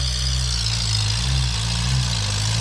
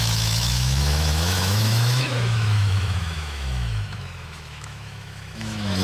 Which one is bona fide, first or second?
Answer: first